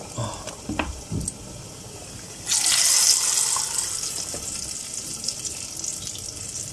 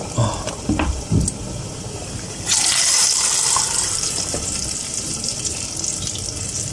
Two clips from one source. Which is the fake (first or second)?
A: second